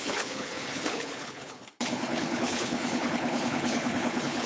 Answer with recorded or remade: remade